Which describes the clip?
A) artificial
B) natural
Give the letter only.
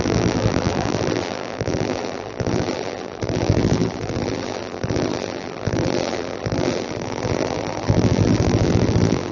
A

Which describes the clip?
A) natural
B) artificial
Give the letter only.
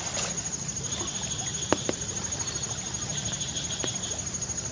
A